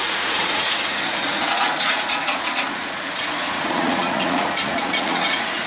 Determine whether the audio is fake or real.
fake